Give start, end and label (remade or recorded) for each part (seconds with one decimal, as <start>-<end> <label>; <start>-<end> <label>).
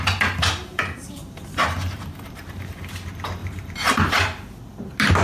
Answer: 0.0-0.7 recorded; 0.7-2.7 remade; 2.7-3.4 recorded; 3.4-4.1 remade; 4.1-5.2 recorded